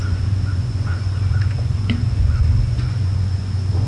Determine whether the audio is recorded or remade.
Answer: remade